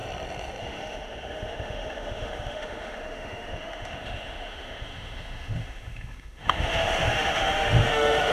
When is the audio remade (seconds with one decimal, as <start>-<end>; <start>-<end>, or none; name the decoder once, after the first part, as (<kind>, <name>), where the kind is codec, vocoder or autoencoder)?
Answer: 0.6-8.3 (autoencoder, DAC-VAE)